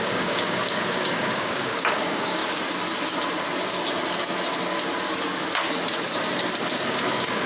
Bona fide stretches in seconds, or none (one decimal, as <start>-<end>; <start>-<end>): 2.4-6.9